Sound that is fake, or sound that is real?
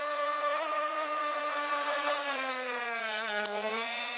fake